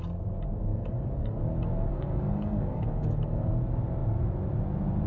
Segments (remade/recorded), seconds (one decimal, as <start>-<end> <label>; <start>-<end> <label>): 0.0-0.7 recorded; 0.7-1.4 remade; 1.4-1.9 recorded; 1.9-3.5 remade; 3.5-5.1 recorded